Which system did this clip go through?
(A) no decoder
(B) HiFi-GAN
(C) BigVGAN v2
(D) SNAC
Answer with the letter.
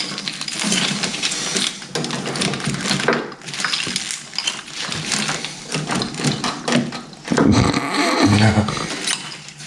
A